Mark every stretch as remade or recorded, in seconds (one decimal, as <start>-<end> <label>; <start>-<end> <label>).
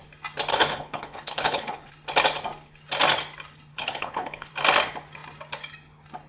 0.0-0.5 recorded; 0.5-1.9 remade; 1.9-3.7 recorded; 3.7-4.5 remade; 4.5-6.3 recorded